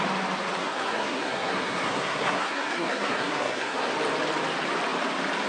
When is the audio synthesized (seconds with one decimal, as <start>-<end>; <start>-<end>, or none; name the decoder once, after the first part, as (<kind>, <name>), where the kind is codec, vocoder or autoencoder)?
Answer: 0.6-3.9 (codec, SNAC)

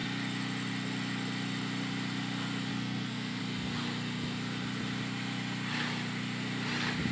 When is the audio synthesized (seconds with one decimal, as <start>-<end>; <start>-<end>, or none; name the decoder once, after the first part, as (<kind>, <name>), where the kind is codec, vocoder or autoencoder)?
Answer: 2.7-3.4 (codec, SNAC)

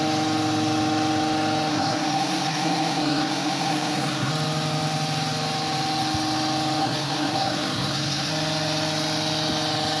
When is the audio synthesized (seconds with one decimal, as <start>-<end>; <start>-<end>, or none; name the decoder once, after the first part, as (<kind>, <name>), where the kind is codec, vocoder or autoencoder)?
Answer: 1.7-4.3 (codec, SNAC); 6.8-8.3